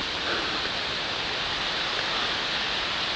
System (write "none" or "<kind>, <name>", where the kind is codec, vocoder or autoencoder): none